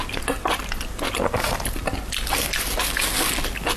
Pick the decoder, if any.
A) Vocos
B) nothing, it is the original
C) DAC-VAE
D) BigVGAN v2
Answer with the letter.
B